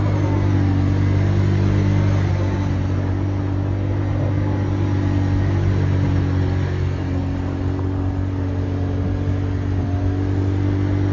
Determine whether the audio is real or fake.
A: real